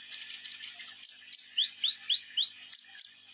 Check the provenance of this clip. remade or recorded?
recorded